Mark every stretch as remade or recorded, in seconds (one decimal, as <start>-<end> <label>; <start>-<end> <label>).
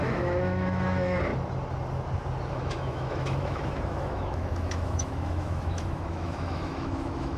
0.0-1.3 remade; 1.3-2.5 recorded; 2.5-7.4 remade